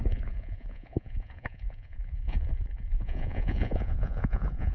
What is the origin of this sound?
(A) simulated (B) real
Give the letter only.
A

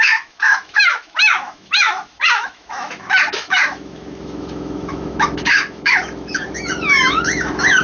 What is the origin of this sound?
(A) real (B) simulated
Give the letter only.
B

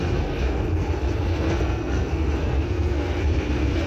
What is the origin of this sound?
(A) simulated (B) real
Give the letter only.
A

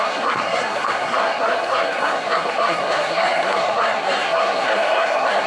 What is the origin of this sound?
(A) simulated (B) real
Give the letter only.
A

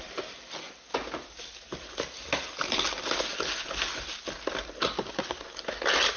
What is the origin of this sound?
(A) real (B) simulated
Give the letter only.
A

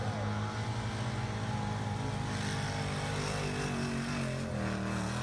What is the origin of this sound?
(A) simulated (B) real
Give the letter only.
B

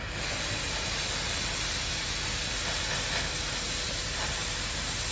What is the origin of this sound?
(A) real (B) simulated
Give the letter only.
A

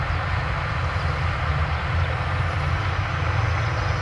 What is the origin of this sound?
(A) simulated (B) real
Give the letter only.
B